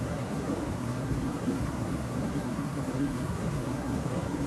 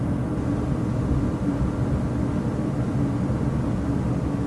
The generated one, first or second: first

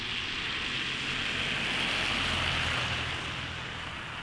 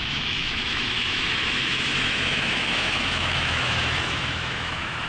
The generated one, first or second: second